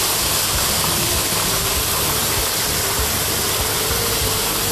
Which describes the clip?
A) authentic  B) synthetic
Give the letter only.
B